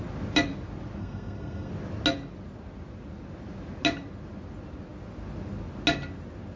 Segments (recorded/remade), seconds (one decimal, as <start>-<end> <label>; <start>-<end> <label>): 0.0-1.0 recorded; 1.0-1.7 remade; 1.7-6.6 recorded